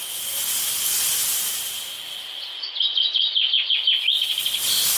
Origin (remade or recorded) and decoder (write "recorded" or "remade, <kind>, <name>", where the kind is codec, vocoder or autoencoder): recorded